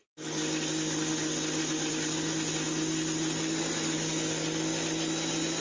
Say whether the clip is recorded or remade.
recorded